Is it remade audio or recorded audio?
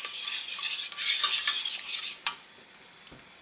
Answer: recorded